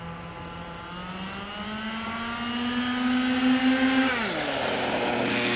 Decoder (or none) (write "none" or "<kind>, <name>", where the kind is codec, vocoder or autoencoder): none